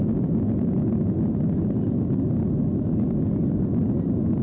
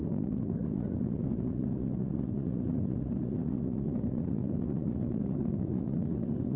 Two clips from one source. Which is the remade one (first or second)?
second